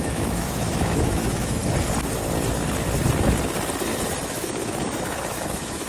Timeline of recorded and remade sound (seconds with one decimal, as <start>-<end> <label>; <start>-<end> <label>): 0.0-1.6 remade; 1.6-4.2 recorded; 4.2-5.9 remade